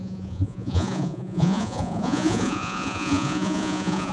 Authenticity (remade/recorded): remade